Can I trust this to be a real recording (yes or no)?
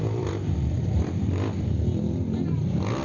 no